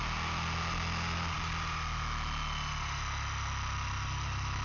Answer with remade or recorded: recorded